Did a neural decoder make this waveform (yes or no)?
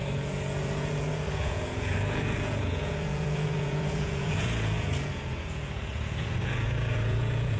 yes